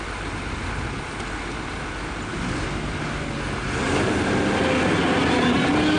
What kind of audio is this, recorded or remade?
recorded